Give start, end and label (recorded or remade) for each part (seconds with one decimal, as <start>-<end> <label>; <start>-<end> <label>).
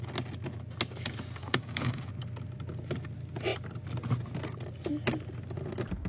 0.0-1.4 recorded; 1.4-2.1 remade; 2.1-6.1 recorded